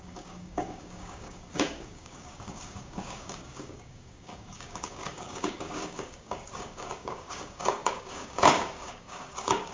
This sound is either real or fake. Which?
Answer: fake